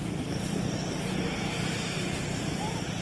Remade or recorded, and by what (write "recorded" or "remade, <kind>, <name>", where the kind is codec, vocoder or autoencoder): recorded